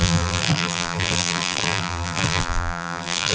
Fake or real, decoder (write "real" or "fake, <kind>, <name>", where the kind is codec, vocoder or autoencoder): fake, vocoder, BigVGAN v2